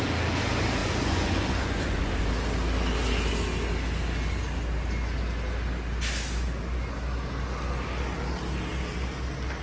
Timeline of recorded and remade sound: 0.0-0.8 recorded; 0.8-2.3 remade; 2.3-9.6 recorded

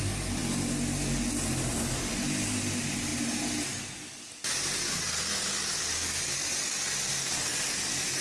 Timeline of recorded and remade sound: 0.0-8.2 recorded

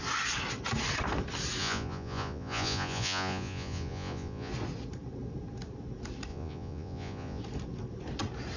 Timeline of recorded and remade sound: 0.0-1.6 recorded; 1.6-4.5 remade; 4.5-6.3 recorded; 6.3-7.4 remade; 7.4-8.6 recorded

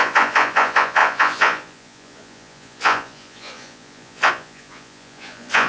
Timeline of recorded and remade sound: 0.0-5.7 remade